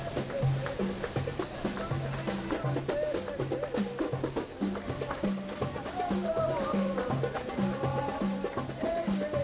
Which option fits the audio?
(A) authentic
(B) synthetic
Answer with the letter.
A